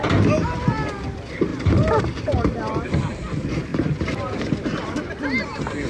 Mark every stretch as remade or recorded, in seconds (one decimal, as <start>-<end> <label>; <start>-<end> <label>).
0.0-1.5 recorded; 1.5-2.9 remade; 2.9-3.7 recorded; 3.7-4.2 remade; 4.2-5.9 recorded

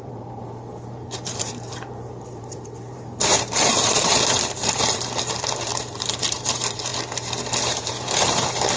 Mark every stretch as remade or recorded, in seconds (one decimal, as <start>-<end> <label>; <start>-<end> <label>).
0.0-6.9 remade; 6.9-7.7 recorded; 7.7-8.8 remade

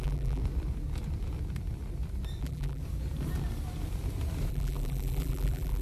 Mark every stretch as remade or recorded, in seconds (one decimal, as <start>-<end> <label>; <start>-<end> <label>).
0.0-0.4 remade; 0.4-2.4 recorded; 2.4-2.8 remade; 2.8-4.5 recorded; 4.5-5.8 remade

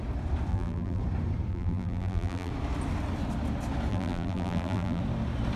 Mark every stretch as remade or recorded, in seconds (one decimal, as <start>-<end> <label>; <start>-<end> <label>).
0.0-0.5 recorded; 0.5-1.0 remade; 1.0-1.5 recorded; 1.5-2.5 remade; 2.5-3.9 recorded; 3.9-5.0 remade; 5.0-5.6 recorded